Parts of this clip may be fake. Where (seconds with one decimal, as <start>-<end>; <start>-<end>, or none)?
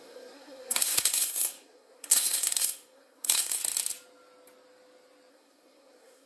0.0-3.6; 5.3-6.3